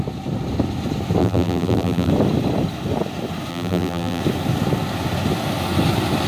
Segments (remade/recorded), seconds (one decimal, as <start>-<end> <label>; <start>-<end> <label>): 0.0-1.2 recorded; 1.2-2.1 remade; 2.1-3.5 recorded; 3.5-4.2 remade; 4.2-6.3 recorded